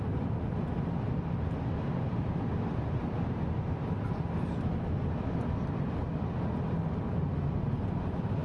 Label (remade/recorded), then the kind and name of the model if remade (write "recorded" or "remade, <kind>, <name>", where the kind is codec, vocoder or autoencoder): recorded